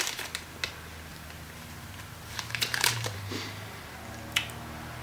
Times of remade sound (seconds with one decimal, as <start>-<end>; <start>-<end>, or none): 1.1-3.8